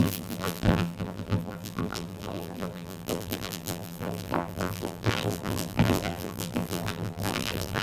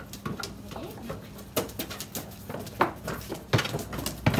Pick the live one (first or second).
second